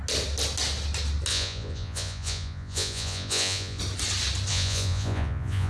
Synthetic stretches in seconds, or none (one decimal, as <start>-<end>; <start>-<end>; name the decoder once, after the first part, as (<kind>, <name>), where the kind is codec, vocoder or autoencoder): 1.3-3.8 (vocoder, Vocos); 4.5-5.7